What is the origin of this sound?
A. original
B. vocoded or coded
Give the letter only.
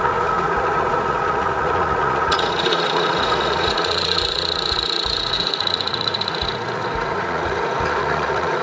B